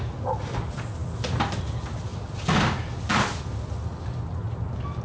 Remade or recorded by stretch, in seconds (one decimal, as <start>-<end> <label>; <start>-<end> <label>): 0.0-5.0 recorded